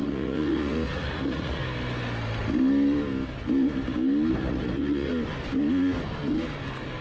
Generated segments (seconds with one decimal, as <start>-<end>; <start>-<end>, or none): 0.0-1.6; 4.3-5.1